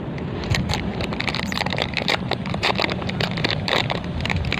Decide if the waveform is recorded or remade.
remade